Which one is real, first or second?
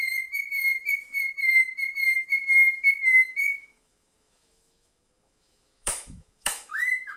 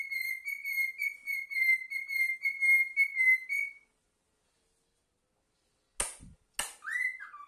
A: second